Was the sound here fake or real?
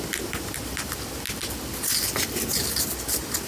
real